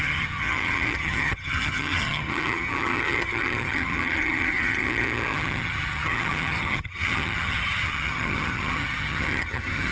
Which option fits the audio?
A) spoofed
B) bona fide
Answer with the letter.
A